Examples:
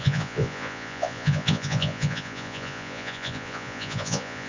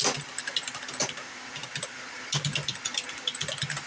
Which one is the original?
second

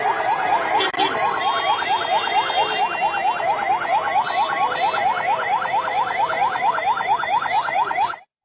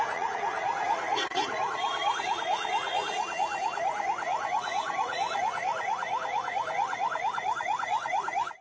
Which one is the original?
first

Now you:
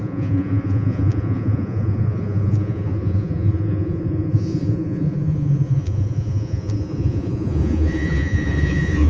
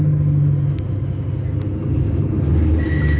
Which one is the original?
second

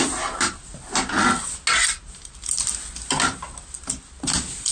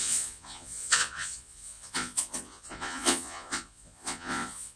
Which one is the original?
first